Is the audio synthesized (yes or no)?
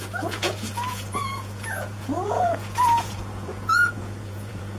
yes